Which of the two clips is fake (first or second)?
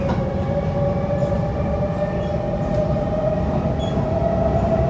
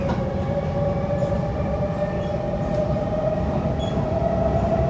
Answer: second